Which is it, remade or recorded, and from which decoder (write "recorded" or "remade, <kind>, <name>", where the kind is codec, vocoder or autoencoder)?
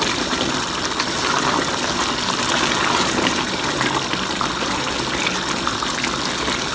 recorded